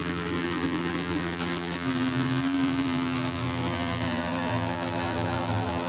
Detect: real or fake fake